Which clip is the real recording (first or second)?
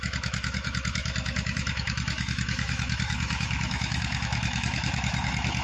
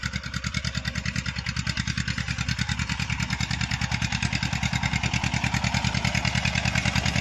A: second